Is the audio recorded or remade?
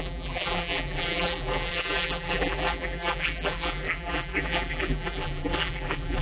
remade